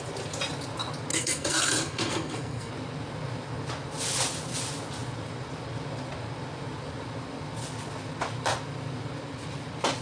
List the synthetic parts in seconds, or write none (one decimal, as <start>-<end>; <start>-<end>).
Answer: 1.1-2.7